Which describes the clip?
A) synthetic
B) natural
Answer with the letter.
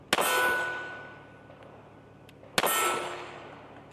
B